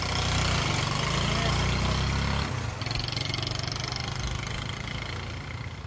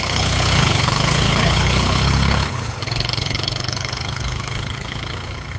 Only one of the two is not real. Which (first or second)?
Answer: second